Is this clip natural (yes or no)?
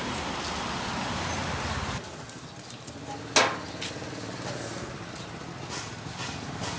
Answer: yes